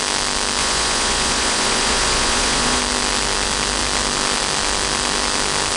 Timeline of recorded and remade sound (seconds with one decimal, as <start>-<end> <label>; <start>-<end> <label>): 0.0-0.6 recorded; 0.6-2.8 remade; 2.8-5.8 recorded